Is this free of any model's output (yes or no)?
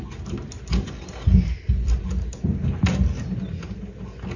yes